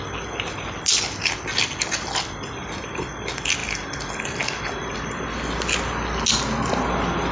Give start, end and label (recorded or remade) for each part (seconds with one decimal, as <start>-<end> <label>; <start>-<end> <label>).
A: 0.0-7.3 recorded